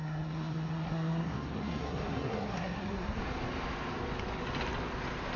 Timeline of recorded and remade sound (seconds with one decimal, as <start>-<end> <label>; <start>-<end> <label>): 0.0-3.2 remade; 3.2-5.4 recorded